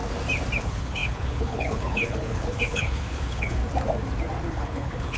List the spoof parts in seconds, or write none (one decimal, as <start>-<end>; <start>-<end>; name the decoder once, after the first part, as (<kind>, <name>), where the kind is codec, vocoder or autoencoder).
0.6-3.6 (codec, HILCodec); 4.5-5.2